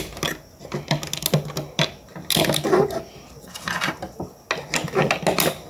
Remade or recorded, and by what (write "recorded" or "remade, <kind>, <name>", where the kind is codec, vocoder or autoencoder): recorded